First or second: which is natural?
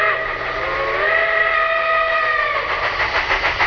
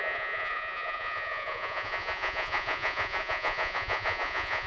first